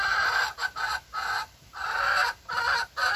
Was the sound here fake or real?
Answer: fake